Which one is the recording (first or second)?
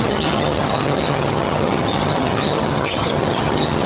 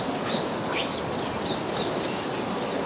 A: second